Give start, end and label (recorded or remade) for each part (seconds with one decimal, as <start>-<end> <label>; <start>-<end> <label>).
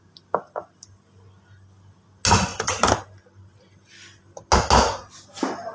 0.0-5.7 recorded